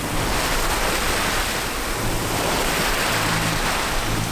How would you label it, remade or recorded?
recorded